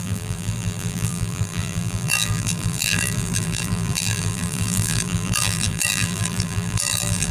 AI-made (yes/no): yes